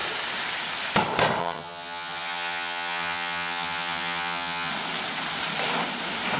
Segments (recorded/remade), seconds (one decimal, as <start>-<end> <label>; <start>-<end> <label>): 0.0-1.4 recorded; 1.4-4.7 remade; 4.7-6.4 recorded